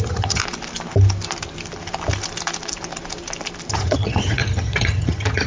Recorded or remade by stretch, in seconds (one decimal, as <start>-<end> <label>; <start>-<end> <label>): 0.0-0.4 remade; 0.4-3.7 recorded; 3.7-5.5 remade